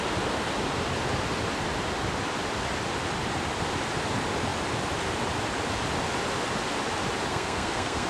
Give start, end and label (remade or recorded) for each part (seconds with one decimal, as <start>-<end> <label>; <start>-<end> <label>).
0.0-7.3 recorded; 7.3-8.1 remade